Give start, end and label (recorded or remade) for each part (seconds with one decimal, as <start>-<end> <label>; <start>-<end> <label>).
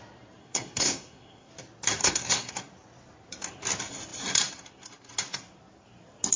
0.0-0.4 recorded; 0.4-1.5 remade; 1.5-2.0 recorded; 2.0-2.5 remade; 2.5-6.4 recorded